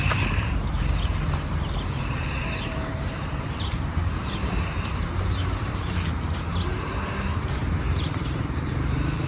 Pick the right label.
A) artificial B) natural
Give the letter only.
A